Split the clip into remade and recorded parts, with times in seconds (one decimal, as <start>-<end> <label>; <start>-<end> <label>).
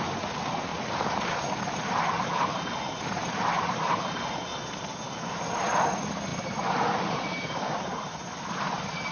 0.0-0.7 remade; 0.7-1.6 recorded; 1.6-4.5 remade; 4.5-5.5 recorded; 5.5-9.1 remade